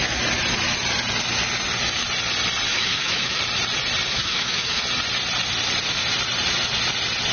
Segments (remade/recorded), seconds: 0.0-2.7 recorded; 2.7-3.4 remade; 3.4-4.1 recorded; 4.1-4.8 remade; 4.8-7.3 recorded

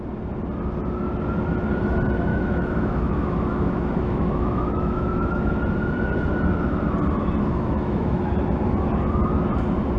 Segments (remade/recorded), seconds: 0.0-2.3 recorded; 2.3-5.5 remade; 5.5-7.5 recorded; 7.5-8.2 remade; 8.2-10.0 recorded

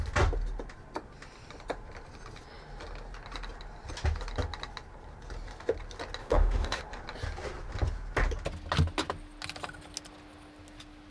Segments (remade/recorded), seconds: 0.0-6.2 recorded; 6.2-6.8 remade; 6.8-11.1 recorded

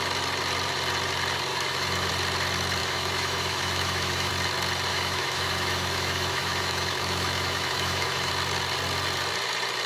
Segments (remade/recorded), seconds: 0.0-1.5 recorded; 1.5-2.1 remade; 2.1-2.8 recorded; 2.8-4.3 remade; 4.3-4.9 recorded; 4.9-8.3 remade; 8.3-9.9 recorded

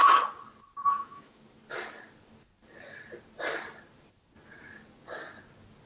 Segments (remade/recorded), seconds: 0.0-0.8 recorded; 0.8-1.4 remade; 1.4-5.9 recorded